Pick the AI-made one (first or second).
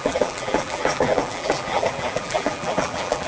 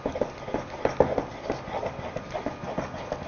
first